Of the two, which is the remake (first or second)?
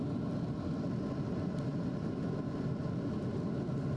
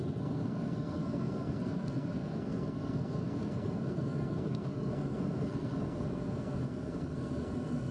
second